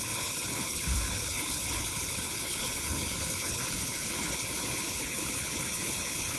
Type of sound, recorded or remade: remade